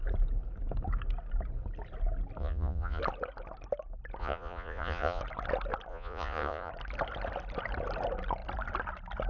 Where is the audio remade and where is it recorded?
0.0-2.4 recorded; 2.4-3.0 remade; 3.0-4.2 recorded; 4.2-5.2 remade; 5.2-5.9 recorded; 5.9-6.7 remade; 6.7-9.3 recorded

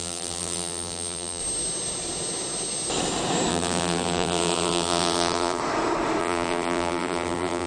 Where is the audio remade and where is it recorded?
0.0-1.4 remade; 1.4-3.5 recorded; 3.5-5.6 remade; 5.6-6.2 recorded; 6.2-7.7 remade

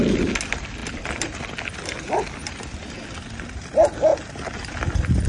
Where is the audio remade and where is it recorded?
0.0-0.8 recorded; 0.8-1.5 remade; 1.5-5.3 recorded

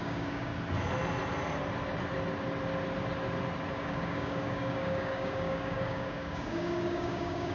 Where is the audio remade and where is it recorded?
0.0-0.5 remade; 0.5-3.7 recorded; 3.7-7.5 remade